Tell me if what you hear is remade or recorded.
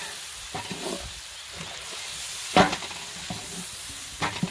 recorded